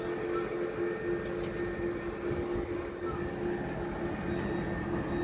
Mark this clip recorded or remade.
recorded